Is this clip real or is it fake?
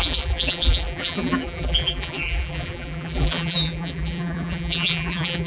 fake